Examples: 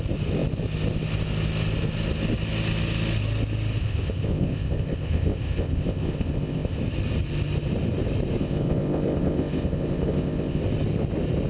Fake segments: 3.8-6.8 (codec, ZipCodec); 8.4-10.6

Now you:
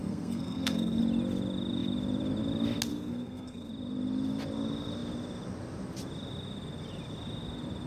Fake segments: 0.0-1.0 (codec, SNAC); 2.9-3.7

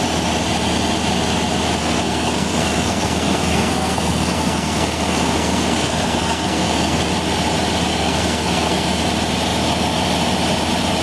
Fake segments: 1.8-7.0 (codec, SNAC); 7.9-9.0

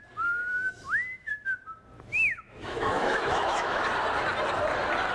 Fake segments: 0.5-1.3 (autoencoder, DAC-VAE); 2.1-3.8

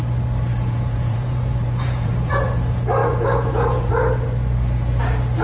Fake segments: 0.5-2.3 (vocoder, Vocos); 3.0-3.9

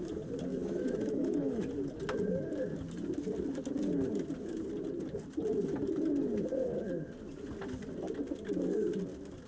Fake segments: 0.5-1.6 (autoencoder, DAC-VAE)